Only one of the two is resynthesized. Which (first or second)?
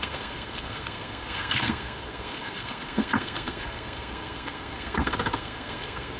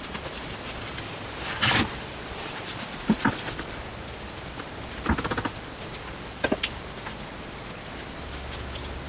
first